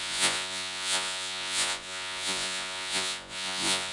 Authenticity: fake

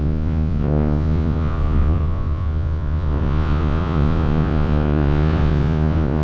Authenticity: fake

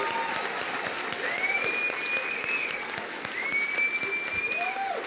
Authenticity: real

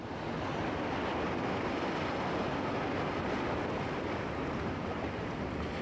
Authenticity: real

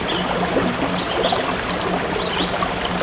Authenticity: real